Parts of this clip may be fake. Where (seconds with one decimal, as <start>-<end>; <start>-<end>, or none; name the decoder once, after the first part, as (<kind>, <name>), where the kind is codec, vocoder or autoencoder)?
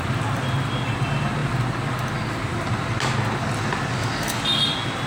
none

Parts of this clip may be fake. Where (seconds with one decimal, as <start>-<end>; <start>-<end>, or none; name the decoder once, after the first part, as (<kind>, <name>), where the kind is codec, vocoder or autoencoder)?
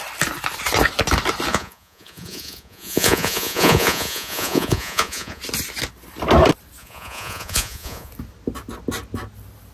1.5-5.4 (vocoder, Vocos); 6.8-8.1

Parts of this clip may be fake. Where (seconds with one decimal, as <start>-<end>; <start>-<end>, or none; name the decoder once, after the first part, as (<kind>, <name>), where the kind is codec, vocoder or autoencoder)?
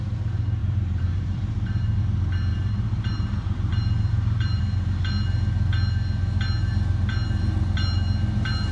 0.6-2.0 (vocoder, BigVGAN v2); 2.5-4.6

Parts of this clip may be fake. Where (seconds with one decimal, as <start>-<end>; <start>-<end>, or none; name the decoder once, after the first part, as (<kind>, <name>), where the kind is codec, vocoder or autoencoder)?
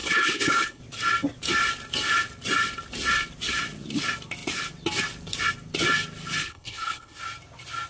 0.0-0.8 (codec, HILCodec); 6.4-7.2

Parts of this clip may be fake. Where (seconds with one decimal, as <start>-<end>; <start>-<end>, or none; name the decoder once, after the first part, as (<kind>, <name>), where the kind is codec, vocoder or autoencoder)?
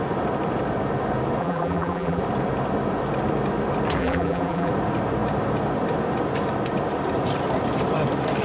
1.4-2.2 (vocoder, BigVGAN v2); 4.0-4.7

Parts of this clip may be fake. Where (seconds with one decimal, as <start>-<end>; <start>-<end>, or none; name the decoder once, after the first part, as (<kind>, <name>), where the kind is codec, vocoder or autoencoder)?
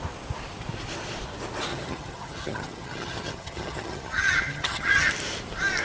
1.7-5.1 (vocoder, HiFi-GAN)